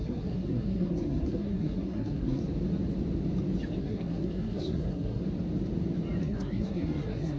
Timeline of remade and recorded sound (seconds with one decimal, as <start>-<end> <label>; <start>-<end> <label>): 0.0-2.4 remade; 2.4-3.8 recorded; 3.8-5.2 remade; 5.2-6.2 recorded; 6.2-7.4 remade